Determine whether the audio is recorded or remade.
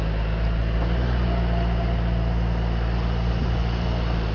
recorded